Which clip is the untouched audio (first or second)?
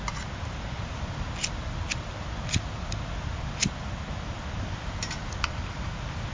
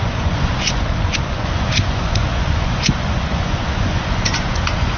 first